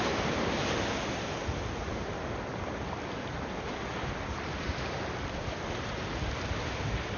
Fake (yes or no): no